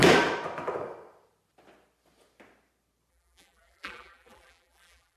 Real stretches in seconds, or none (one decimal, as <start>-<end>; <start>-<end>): 0.0-3.1